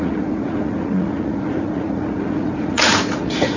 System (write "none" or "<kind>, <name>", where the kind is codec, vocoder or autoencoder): vocoder, Vocos